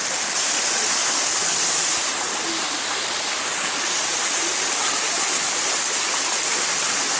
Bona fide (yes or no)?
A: yes